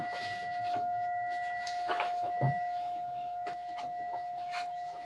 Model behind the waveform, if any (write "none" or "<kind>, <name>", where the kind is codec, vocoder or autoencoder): autoencoder, DAC-VAE